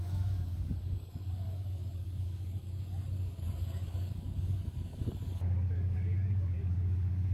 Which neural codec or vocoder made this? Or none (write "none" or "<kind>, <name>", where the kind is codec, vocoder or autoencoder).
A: codec, DAC